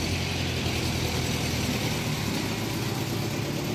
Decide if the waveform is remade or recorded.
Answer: recorded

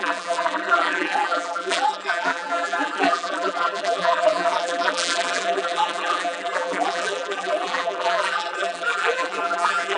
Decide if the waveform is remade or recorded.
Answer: remade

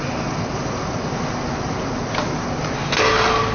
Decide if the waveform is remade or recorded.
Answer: recorded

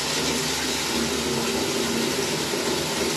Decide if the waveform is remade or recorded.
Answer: recorded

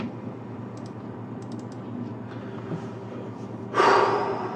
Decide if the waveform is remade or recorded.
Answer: recorded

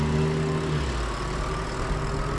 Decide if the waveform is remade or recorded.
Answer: recorded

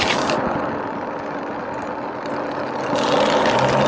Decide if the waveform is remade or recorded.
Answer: recorded